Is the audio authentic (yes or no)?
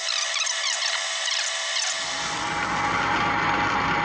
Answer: yes